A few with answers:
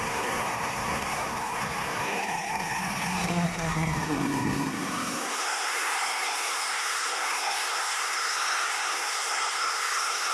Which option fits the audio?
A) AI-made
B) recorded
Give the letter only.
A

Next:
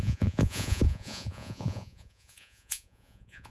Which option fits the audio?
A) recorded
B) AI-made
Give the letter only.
B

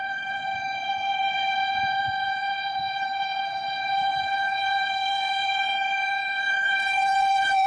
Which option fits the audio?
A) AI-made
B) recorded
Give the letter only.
A